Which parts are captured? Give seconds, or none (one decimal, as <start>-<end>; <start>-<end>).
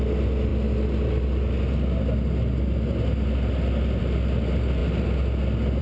0.0-5.8